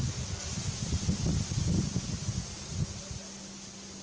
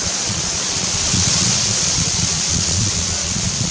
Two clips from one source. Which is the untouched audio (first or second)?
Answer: first